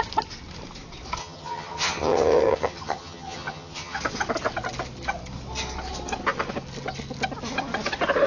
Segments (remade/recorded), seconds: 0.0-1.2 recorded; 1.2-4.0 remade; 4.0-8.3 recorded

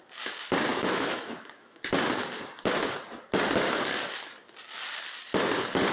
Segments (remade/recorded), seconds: 0.0-0.7 recorded; 0.7-1.8 remade; 1.8-5.9 recorded

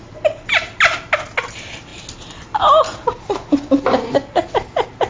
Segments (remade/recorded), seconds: 0.0-5.1 recorded

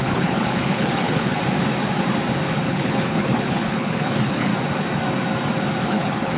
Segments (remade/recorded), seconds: 0.0-1.4 remade; 1.4-2.5 recorded; 2.5-4.5 remade; 4.5-5.8 recorded; 5.8-6.4 remade